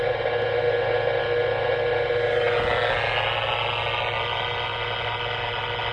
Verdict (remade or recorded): recorded